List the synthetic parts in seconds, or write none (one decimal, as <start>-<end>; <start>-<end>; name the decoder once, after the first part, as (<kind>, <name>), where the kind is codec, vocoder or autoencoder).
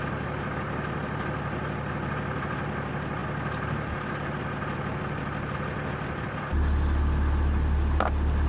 none